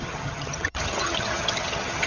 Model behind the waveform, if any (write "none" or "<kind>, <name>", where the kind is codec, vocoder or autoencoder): vocoder, HiFi-GAN